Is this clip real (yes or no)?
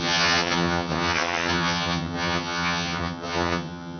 no